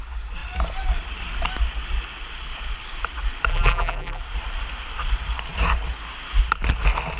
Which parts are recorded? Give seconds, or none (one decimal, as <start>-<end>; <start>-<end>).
0.0-3.5; 4.2-7.2